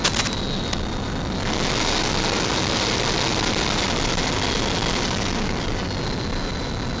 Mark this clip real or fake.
real